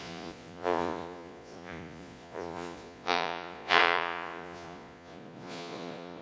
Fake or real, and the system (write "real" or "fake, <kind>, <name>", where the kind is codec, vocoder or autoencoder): fake, vocoder, Vocos